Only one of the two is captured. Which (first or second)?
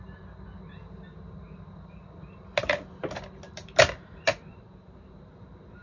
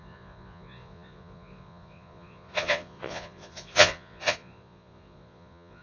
first